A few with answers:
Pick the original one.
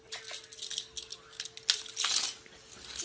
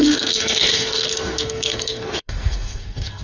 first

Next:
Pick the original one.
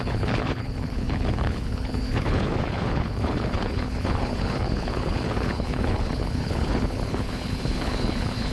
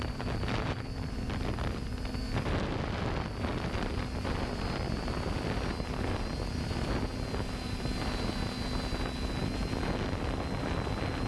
second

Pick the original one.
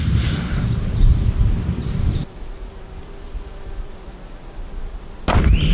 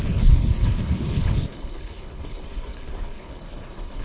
first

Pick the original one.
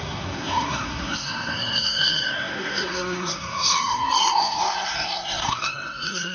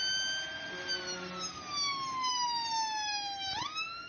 second